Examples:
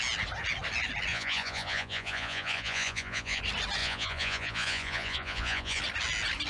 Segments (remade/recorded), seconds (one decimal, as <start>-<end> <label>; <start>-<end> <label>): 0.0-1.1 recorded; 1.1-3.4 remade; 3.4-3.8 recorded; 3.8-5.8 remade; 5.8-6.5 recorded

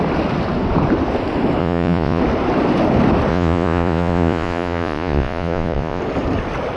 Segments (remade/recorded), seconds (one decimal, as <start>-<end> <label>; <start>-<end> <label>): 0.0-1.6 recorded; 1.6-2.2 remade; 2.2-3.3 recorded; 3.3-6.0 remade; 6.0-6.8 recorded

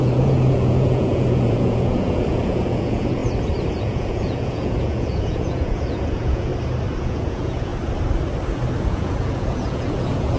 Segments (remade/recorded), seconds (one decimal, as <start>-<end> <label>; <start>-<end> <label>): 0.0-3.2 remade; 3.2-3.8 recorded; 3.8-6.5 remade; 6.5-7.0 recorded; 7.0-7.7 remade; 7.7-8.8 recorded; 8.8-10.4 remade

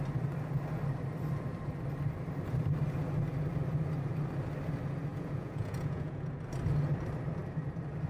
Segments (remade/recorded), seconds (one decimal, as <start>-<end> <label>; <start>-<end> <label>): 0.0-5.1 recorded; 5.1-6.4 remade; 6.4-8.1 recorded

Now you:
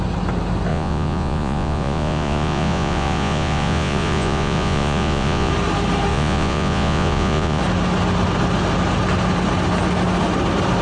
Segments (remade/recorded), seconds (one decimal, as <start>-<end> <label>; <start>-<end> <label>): 0.0-0.7 recorded; 0.7-5.5 remade; 5.5-6.1 recorded; 6.1-7.6 remade; 7.6-10.8 recorded

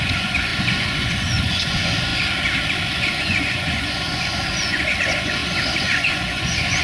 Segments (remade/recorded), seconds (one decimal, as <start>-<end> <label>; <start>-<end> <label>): 0.0-2.1 remade; 2.1-2.9 recorded; 2.9-6.8 remade